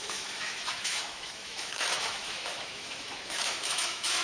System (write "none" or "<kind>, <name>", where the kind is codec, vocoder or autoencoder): autoencoder, DAC-VAE